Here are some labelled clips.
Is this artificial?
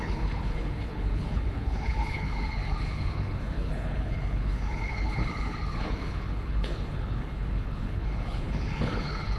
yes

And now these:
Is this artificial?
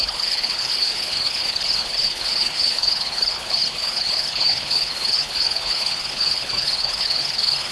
yes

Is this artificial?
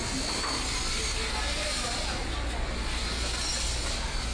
no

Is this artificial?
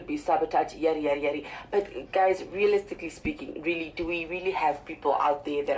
no